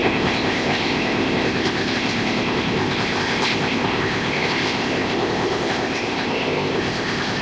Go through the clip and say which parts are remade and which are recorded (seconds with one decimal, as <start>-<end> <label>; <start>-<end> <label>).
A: 0.0-7.4 remade